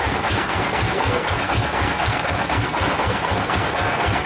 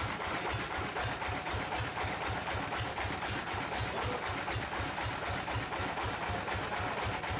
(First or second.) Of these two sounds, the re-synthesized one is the first